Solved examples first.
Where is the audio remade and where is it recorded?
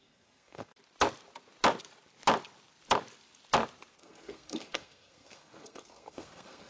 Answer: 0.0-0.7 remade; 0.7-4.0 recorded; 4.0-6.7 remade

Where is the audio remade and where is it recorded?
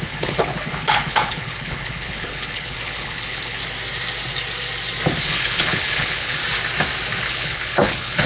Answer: 0.0-3.6 remade; 3.6-5.2 recorded; 5.2-6.4 remade; 6.4-7.2 recorded; 7.2-8.3 remade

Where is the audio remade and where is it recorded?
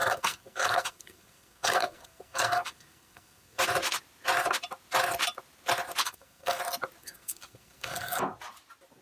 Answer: 0.0-3.6 remade; 3.6-6.0 recorded; 6.0-6.6 remade; 6.6-7.0 recorded; 7.0-8.2 remade; 8.2-9.0 recorded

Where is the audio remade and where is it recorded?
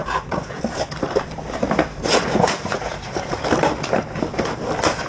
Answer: 0.0-0.6 remade; 0.6-1.9 recorded; 1.9-3.4 remade; 3.4-5.1 recorded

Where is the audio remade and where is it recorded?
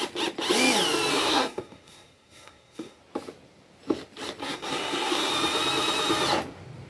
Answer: 0.0-1.1 recorded; 1.1-3.0 remade; 3.0-4.4 recorded; 4.4-5.3 remade; 5.3-6.9 recorded